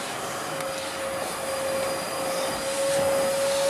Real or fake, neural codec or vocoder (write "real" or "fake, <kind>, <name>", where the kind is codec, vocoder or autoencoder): real